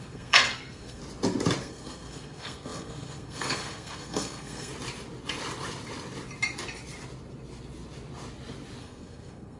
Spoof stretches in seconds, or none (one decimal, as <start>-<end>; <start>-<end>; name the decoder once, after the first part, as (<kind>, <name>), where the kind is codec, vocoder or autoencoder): 0.0-1.0 (codec, SNAC); 1.6-4.7; 8.8-9.6